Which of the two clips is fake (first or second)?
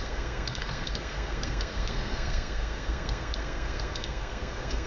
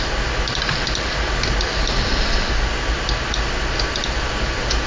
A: first